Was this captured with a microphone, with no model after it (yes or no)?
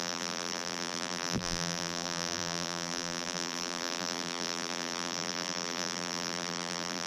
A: no